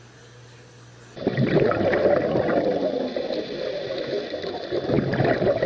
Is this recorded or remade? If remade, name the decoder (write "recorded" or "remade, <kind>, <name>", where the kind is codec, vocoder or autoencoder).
recorded